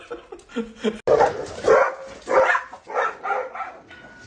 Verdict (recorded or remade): recorded